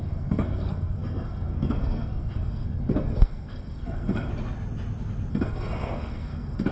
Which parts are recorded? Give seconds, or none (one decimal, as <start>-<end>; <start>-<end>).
4.3-5.3